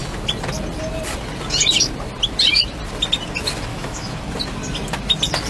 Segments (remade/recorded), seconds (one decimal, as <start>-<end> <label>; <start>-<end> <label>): 0.0-3.7 recorded; 3.7-4.2 remade; 4.2-5.5 recorded